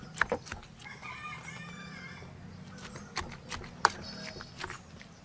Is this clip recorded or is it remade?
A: recorded